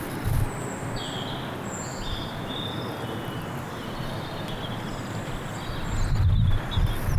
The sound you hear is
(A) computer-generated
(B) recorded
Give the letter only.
B